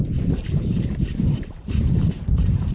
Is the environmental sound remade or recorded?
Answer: remade